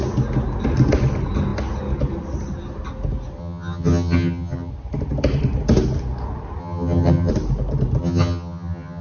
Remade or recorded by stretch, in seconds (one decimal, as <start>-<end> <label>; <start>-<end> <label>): 0.0-3.4 recorded; 3.4-4.7 remade; 4.7-6.6 recorded; 6.6-7.3 remade; 7.3-8.0 recorded; 8.0-9.0 remade